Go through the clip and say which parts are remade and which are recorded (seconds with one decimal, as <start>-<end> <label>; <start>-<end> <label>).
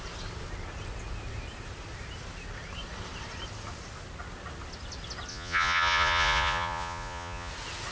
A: 0.0-5.3 recorded; 5.3-7.5 remade; 7.5-7.9 recorded